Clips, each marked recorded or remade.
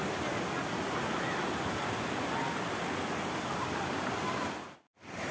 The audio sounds recorded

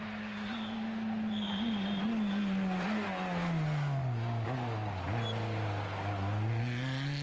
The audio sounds recorded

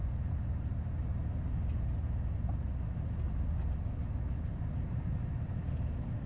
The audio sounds recorded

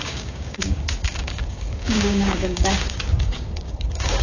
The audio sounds remade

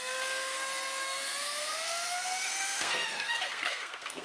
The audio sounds remade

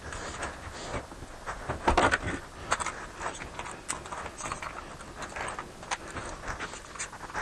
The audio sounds recorded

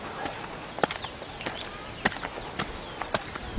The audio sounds recorded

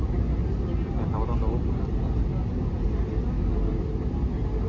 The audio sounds recorded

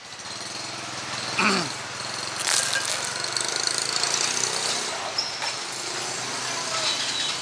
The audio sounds recorded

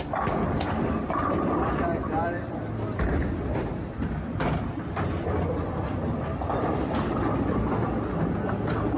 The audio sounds remade